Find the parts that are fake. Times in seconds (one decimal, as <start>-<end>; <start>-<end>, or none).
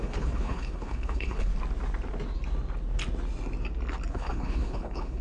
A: 0.0-1.5; 4.1-5.2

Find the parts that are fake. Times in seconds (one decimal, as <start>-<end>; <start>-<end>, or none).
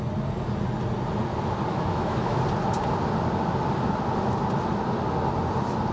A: 1.7-2.4